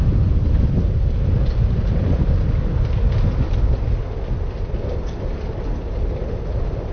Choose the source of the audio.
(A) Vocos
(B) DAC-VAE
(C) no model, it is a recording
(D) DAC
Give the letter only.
C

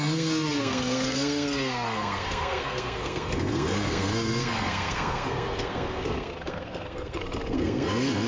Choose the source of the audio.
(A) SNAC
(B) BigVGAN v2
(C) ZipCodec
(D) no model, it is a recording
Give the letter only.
A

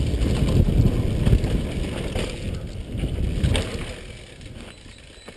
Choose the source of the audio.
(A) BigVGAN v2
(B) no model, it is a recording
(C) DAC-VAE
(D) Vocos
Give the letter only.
B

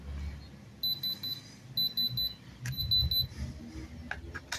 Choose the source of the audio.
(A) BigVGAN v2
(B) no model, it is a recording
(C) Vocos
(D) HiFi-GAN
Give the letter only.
B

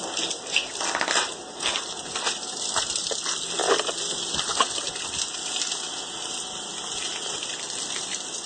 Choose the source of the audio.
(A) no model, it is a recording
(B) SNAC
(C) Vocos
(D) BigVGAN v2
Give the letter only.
A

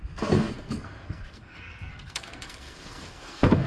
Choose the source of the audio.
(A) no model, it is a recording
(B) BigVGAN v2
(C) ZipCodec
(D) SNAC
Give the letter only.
D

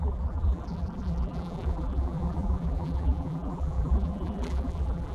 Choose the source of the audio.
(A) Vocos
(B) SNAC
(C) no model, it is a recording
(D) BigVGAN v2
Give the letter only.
D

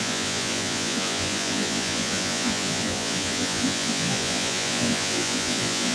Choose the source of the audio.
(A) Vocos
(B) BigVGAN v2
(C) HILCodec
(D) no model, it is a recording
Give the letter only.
A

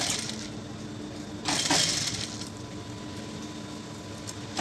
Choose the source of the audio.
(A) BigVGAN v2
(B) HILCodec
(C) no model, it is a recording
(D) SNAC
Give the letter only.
C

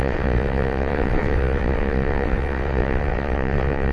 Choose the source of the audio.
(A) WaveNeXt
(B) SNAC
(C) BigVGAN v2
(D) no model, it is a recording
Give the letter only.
A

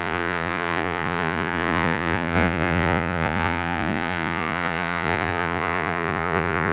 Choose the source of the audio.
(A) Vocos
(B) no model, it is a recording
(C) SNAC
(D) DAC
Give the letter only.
A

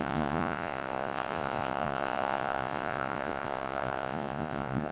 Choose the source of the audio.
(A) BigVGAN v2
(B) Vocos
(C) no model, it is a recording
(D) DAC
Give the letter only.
B